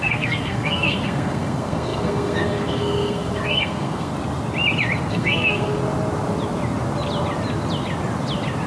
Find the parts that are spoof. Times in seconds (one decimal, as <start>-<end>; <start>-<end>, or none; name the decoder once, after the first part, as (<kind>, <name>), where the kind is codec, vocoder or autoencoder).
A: 0.0-4.1 (codec, SNAC); 5.1-5.8